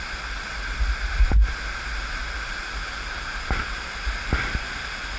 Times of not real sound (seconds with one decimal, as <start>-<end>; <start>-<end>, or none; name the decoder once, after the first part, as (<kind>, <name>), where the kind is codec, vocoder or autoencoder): none